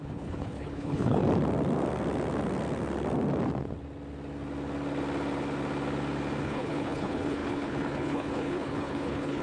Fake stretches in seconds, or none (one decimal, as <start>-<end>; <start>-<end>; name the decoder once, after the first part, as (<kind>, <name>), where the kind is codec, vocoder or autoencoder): 0.0-1.2 (codec, HILCodec); 6.4-9.4